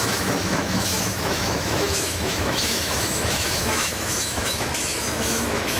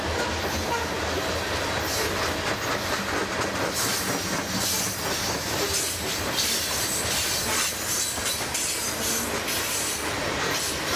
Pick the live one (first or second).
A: second